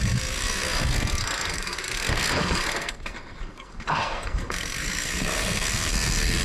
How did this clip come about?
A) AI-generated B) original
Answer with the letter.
A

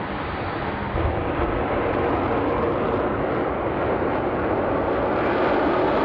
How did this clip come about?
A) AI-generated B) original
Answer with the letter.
B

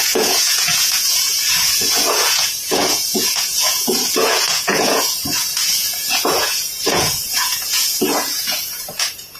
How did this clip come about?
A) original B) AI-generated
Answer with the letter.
B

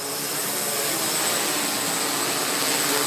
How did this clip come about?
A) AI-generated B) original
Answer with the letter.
B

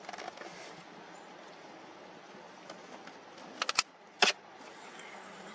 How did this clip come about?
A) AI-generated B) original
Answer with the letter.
B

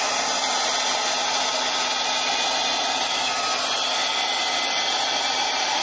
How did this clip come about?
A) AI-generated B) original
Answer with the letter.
B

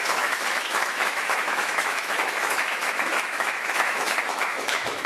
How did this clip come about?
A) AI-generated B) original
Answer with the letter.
A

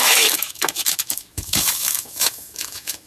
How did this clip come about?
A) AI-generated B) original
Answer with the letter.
A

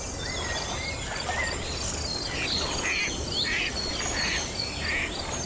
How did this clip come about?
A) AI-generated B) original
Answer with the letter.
B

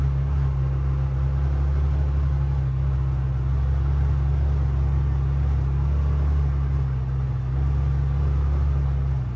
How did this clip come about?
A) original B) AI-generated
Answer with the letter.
A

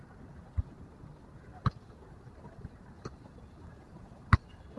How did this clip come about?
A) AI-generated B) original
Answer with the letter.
B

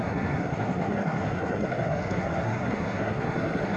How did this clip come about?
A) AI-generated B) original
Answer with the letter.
A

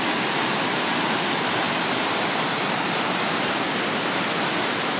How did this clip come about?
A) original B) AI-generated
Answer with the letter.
B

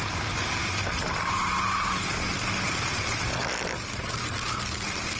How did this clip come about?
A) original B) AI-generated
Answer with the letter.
A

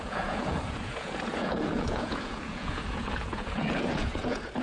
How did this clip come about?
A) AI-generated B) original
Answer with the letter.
A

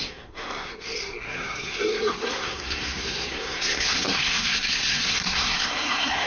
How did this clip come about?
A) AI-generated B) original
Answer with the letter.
A